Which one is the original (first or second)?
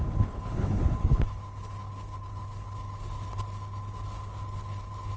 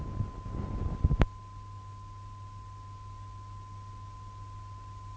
second